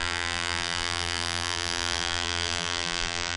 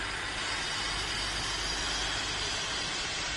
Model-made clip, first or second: first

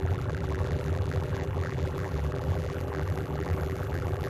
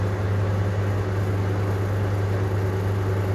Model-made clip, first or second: first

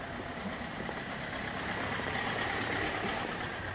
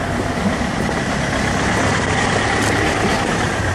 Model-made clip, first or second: first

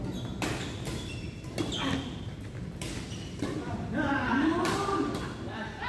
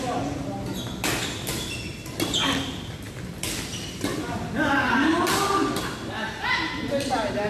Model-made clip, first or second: first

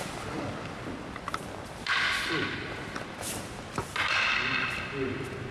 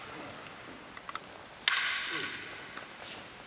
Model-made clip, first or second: first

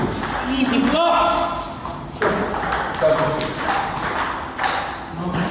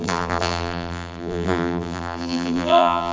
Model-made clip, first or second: second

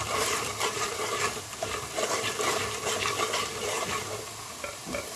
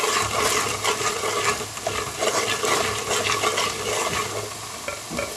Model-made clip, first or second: first